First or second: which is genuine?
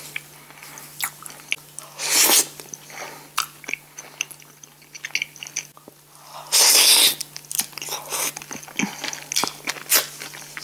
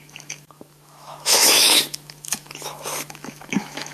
first